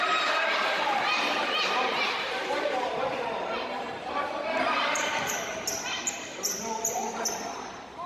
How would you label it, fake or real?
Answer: fake